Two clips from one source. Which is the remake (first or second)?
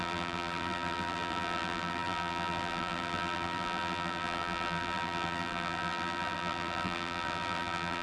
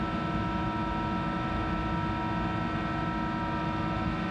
first